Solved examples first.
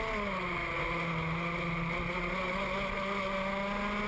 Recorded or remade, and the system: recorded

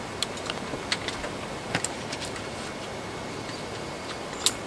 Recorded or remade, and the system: recorded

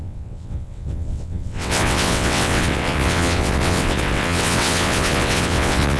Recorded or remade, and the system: remade, vocoder, WaveNeXt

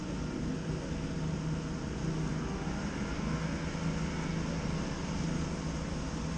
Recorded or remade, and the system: recorded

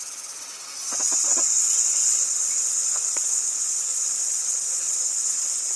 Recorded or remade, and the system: remade, vocoder, WaveNeXt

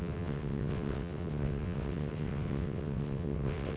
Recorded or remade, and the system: remade, vocoder, WaveNeXt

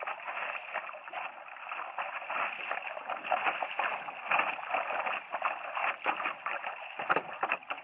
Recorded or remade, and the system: recorded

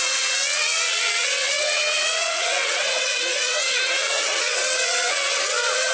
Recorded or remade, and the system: remade, vocoder, WaveNeXt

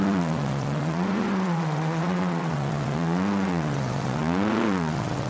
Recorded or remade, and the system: remade, vocoder, WaveNeXt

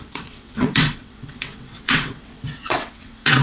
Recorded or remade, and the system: remade, vocoder, WaveNeXt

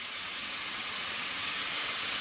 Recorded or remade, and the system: remade, vocoder, WaveNeXt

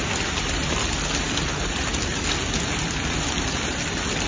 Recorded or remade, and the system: recorded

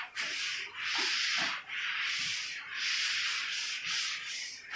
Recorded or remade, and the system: recorded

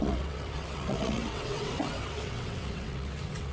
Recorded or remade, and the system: remade, vocoder, WaveNeXt